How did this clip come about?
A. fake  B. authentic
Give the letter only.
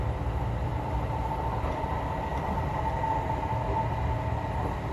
A